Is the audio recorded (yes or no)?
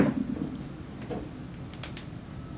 yes